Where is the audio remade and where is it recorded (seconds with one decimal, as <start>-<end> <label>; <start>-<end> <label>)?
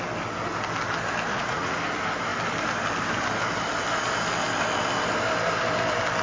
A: 0.0-1.3 recorded; 1.3-1.8 remade; 1.8-6.2 recorded